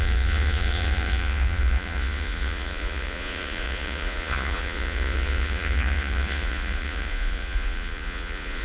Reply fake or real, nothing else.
fake